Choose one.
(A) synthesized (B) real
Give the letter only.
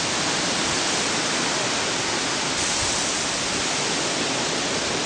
B